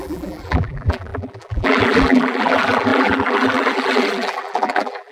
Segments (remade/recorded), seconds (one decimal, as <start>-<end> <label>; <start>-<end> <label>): 0.0-5.1 remade